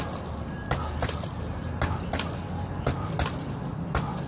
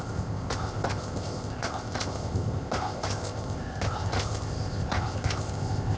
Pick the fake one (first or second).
second